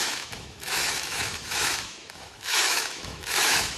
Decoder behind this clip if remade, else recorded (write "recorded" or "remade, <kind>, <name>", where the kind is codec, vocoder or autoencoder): remade, autoencoder, DAC-VAE